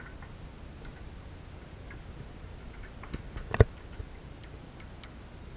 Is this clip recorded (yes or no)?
yes